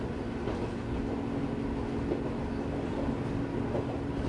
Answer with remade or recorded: recorded